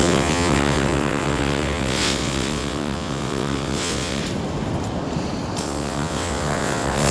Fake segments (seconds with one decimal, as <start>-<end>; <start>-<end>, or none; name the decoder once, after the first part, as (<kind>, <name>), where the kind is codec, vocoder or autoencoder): 0.0-4.2 (vocoder, WaveNeXt); 5.6-7.1